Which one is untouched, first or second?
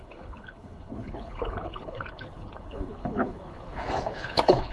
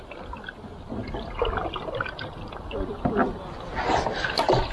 second